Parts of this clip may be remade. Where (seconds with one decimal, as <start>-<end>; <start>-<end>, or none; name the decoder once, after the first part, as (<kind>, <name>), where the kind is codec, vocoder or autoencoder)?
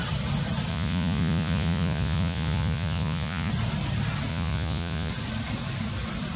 0.7-3.5 (vocoder, Vocos); 4.3-5.1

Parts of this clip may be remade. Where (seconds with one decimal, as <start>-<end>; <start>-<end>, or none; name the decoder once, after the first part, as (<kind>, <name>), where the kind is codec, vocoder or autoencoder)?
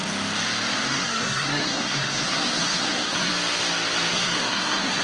0.9-3.3 (codec, SNAC); 4.1-5.0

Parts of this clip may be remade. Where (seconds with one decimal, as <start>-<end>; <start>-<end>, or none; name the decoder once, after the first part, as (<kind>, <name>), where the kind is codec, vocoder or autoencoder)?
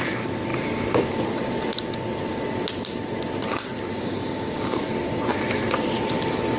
3.9-4.9 (codec, DAC)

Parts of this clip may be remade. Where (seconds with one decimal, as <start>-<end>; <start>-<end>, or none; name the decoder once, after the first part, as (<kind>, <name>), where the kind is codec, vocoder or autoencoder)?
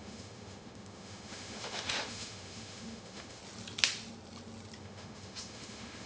0.0-3.4 (autoencoder, DAC-VAE); 4.8-6.1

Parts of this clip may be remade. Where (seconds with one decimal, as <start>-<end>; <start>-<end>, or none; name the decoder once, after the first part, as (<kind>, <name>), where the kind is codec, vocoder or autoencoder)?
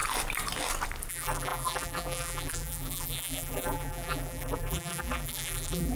1.1-6.0 (vocoder, BigVGAN v2)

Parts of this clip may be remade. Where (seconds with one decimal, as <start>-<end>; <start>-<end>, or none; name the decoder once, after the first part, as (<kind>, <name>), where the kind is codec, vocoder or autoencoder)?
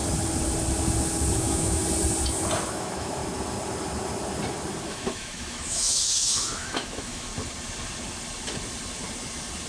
1.4-1.8 (autoencoder, DAC-VAE); 2.7-3.2; 4.8-7.3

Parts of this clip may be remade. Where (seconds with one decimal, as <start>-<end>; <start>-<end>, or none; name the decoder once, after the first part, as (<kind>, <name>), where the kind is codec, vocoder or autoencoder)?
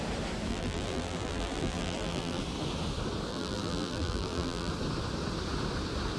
0.5-2.4 (vocoder, BigVGAN v2); 3.3-4.7